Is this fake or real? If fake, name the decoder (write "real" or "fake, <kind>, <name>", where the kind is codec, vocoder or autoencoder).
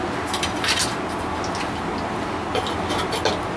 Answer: real